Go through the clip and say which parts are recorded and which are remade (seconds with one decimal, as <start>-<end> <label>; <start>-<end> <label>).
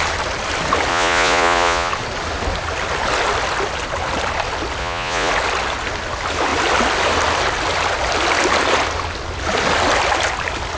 0.0-0.9 recorded; 0.9-1.9 remade; 1.9-4.8 recorded; 4.8-5.3 remade; 5.3-10.8 recorded